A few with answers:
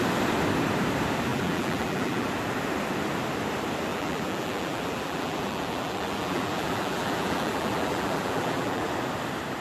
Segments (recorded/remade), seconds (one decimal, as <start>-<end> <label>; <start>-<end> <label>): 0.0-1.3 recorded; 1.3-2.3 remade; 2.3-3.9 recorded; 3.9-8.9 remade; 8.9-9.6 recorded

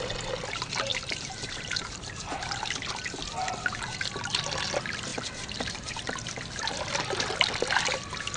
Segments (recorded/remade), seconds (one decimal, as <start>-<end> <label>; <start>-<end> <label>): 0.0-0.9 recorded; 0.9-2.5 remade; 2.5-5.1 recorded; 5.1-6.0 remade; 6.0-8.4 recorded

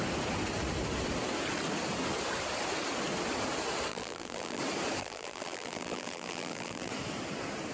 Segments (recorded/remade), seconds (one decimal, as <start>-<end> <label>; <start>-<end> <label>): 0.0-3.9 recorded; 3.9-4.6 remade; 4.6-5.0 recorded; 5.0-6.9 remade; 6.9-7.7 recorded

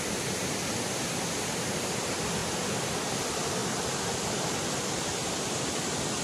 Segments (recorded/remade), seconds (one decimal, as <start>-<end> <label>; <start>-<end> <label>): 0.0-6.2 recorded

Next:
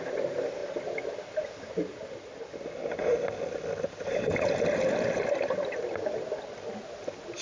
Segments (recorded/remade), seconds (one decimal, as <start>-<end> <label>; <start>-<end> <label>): 0.0-7.4 recorded